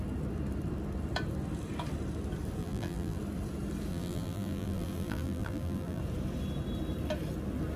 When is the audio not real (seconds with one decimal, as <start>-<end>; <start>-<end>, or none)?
2.6-3.2; 3.9-6.0